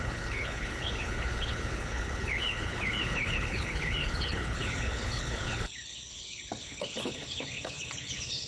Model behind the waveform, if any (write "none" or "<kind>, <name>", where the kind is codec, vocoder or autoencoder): codec, HILCodec